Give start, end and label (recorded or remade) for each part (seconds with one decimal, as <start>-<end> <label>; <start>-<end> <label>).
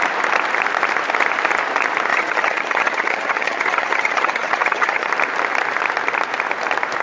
0.0-2.1 recorded; 2.1-5.1 remade; 5.1-7.0 recorded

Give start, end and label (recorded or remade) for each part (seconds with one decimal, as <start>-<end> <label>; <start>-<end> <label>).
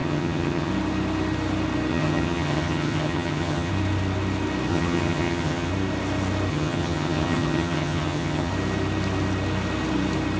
0.0-0.7 remade; 0.7-1.9 recorded; 1.9-3.7 remade; 3.7-4.7 recorded; 4.7-5.7 remade; 5.7-6.5 recorded; 6.5-8.5 remade; 8.5-10.4 recorded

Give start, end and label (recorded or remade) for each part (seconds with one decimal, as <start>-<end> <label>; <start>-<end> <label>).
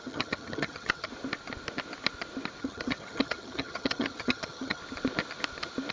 0.0-1.1 remade; 1.1-2.6 recorded; 2.6-4.8 remade; 4.8-5.9 recorded